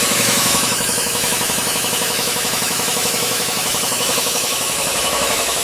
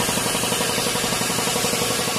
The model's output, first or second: first